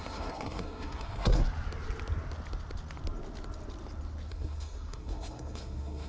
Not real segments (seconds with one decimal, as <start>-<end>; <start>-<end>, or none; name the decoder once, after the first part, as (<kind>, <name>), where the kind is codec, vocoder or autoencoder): 0.0-1.4 (codec, SNAC); 4.3-6.1